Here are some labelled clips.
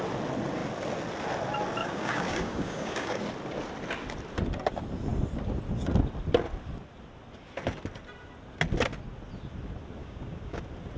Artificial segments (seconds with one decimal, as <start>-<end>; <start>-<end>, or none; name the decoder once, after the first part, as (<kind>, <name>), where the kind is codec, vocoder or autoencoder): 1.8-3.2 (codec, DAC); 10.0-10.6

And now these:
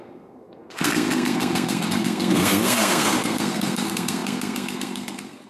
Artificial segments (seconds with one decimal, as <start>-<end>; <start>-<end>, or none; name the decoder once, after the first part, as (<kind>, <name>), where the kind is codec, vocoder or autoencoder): 0.0-5.5 (codec, SNAC)

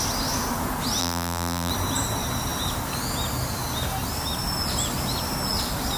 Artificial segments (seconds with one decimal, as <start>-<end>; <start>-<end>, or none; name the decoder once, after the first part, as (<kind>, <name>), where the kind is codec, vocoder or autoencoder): 1.0-1.7 (vocoder, BigVGAN v2)